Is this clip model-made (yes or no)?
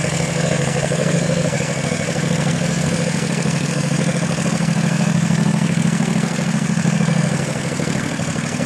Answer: yes